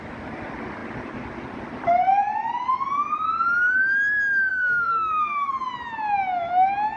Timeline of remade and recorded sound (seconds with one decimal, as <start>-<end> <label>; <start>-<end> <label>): 0.0-4.5 recorded; 4.5-5.5 remade; 5.5-7.0 recorded